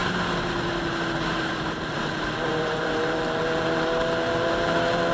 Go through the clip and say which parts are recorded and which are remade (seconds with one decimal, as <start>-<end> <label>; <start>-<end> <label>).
0.0-1.9 recorded; 1.9-5.1 remade